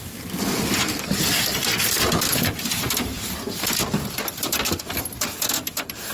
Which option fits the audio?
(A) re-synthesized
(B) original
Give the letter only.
A